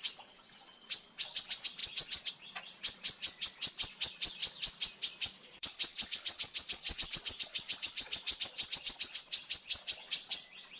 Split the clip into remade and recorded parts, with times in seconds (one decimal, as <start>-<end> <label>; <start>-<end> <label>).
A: 0.0-4.4 remade; 4.4-5.1 recorded; 5.1-10.8 remade